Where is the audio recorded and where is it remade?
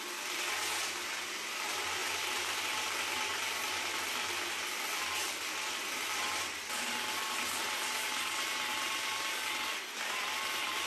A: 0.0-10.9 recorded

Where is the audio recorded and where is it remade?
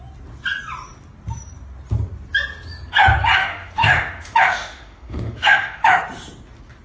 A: 0.0-3.4 recorded; 3.4-6.0 remade; 6.0-6.8 recorded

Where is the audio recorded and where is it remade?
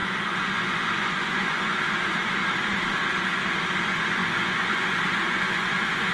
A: 0.0-2.4 remade; 2.4-3.8 recorded; 3.8-6.1 remade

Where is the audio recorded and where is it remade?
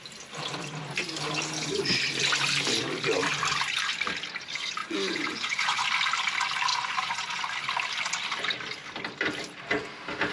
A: 0.0-4.8 recorded; 4.8-5.8 remade; 5.8-6.7 recorded; 6.7-7.4 remade; 7.4-10.3 recorded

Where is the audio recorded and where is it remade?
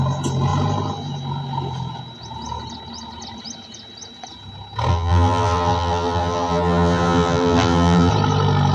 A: 0.0-4.9 recorded; 4.9-8.1 remade; 8.1-8.7 recorded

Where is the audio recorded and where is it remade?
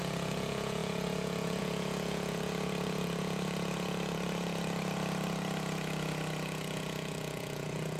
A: 0.0-8.0 remade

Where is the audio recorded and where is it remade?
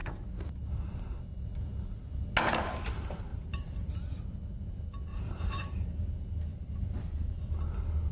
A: 0.0-3.3 recorded; 3.3-3.9 remade; 3.9-5.1 recorded; 5.1-6.1 remade; 6.1-6.5 recorded; 6.5-7.3 remade; 7.3-8.1 recorded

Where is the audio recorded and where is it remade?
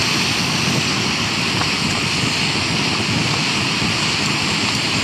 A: 0.0-5.0 recorded